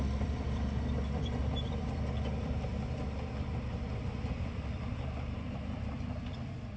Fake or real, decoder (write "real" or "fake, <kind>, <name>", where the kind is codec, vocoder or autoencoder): fake, vocoder, BigVGAN v2